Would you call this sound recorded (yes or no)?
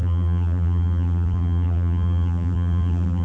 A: no